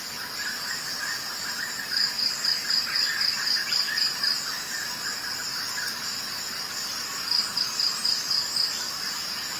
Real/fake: real